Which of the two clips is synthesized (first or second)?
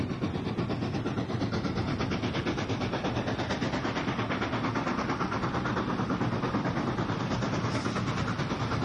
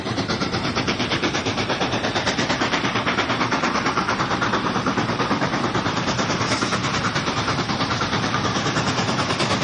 second